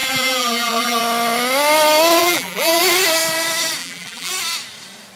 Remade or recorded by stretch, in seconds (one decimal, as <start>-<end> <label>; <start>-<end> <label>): 0.0-1.0 remade; 1.0-2.2 recorded; 2.2-2.8 remade; 2.8-3.8 recorded; 3.8-4.3 remade; 4.3-5.2 recorded